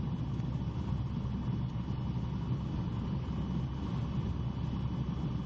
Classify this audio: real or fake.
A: real